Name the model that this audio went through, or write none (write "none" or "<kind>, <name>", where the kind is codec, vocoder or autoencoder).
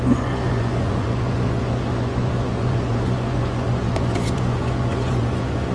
vocoder, Vocos